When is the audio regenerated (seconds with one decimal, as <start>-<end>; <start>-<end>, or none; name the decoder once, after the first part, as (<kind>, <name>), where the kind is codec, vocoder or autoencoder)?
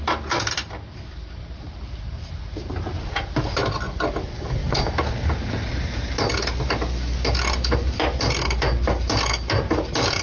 1.4-3.4 (vocoder, BigVGAN v2)